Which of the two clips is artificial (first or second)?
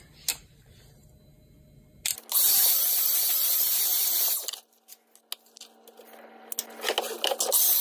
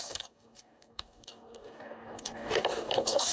second